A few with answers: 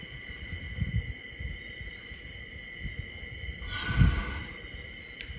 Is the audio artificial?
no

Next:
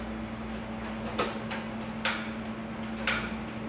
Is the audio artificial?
no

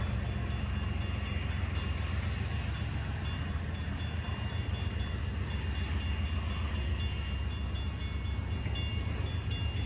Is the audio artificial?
no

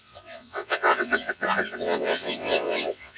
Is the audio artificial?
yes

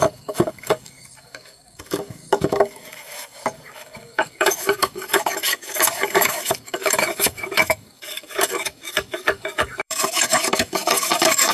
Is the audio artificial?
yes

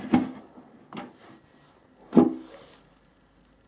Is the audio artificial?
no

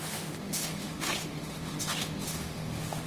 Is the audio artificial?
yes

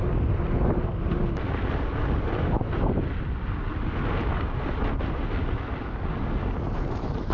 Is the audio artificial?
no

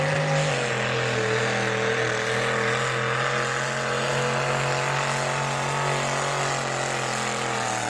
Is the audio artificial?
no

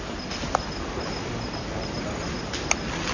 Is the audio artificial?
no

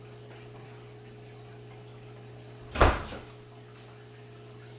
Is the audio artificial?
no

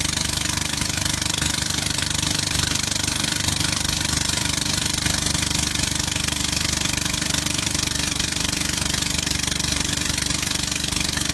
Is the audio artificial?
yes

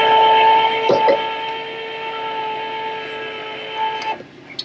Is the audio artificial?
no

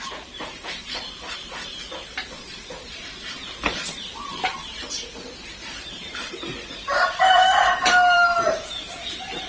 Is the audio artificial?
yes